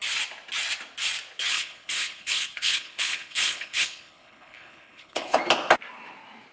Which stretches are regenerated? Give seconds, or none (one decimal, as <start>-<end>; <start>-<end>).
1.5-5.4